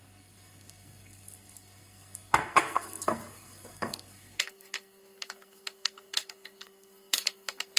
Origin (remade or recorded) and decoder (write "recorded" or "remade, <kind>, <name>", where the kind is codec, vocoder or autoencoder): remade, codec, SNAC